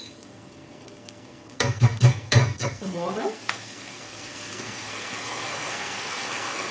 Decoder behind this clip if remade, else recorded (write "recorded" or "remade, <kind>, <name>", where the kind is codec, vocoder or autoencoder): remade, codec, SNAC